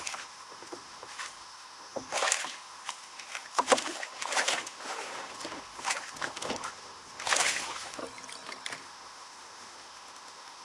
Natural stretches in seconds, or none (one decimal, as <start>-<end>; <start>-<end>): 8.0-8.8